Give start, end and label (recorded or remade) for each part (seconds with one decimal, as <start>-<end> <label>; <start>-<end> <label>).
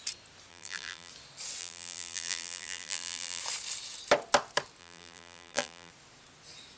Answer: 0.0-0.5 recorded; 0.5-1.1 remade; 1.1-1.6 recorded; 1.6-3.4 remade; 3.4-4.8 recorded; 4.8-5.9 remade; 5.9-6.8 recorded